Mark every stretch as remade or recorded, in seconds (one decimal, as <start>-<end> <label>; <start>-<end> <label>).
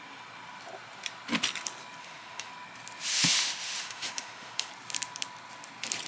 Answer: 0.0-2.0 recorded; 2.0-2.5 remade; 2.5-3.1 recorded; 3.1-4.7 remade; 4.7-6.1 recorded